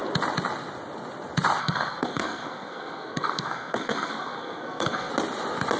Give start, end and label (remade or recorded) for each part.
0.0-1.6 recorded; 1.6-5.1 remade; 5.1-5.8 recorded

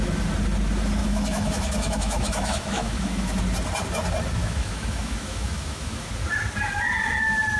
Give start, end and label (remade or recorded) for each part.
0.0-1.0 recorded; 1.0-3.4 remade; 3.4-4.4 recorded; 4.4-6.1 remade; 6.1-7.6 recorded